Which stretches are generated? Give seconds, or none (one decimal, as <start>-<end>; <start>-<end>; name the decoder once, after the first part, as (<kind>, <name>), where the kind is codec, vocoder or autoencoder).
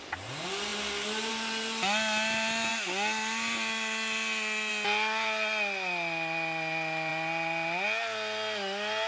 none